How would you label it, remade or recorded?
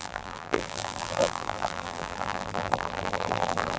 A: remade